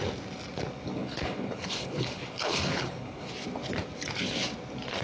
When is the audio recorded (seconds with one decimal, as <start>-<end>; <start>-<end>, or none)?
0.0-0.9; 3.3-5.0